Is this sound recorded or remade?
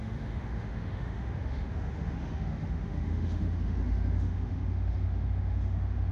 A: remade